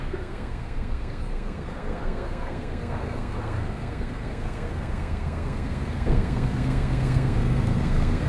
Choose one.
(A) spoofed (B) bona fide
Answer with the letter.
A